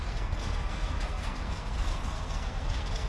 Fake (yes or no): yes